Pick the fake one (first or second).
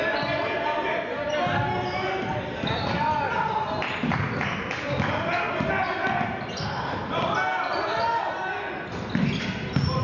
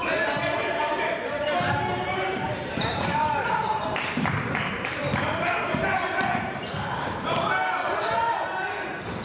second